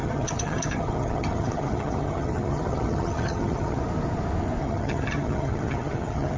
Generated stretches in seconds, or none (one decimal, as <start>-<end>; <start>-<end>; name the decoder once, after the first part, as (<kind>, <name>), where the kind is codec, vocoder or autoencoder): 0.0-3.8 (vocoder, HiFi-GAN); 4.6-6.4